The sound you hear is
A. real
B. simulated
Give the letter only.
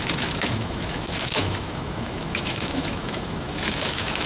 B